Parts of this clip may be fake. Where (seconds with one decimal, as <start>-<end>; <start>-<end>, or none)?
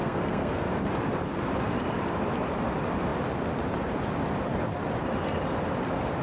0.0-0.6